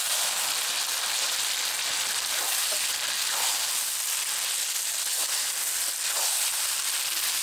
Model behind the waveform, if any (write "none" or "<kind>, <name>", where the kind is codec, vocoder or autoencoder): none